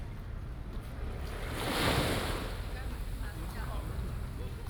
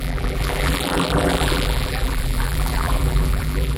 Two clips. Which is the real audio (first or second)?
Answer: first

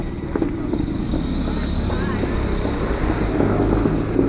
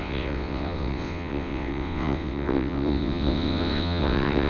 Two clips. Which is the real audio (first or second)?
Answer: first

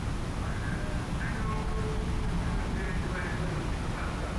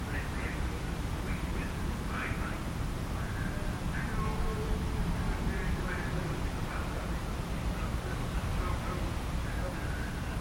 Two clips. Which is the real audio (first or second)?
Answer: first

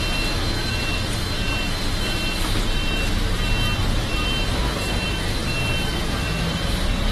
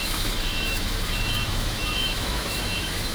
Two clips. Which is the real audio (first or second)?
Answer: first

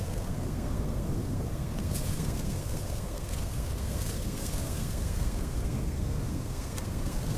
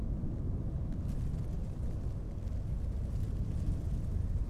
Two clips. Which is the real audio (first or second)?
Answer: second